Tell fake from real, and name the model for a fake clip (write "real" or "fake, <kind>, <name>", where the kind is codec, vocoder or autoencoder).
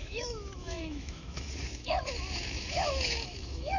fake, autoencoder, DAC-VAE